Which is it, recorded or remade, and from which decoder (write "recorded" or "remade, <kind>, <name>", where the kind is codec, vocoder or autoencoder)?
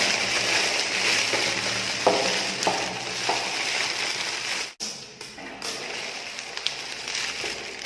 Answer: recorded